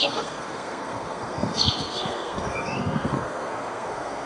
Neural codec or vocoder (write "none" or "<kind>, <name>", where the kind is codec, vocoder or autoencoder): codec, SNAC